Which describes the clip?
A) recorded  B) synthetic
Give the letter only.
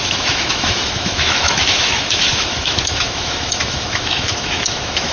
B